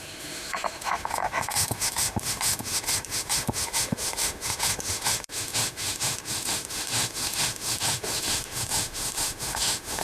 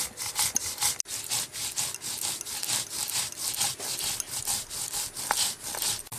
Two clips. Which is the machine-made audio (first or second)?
first